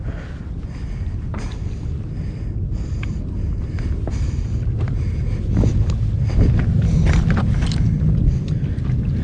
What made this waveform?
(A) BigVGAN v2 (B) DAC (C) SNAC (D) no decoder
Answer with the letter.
D